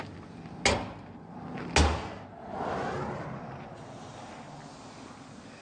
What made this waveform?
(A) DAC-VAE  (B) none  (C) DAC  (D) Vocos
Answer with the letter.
B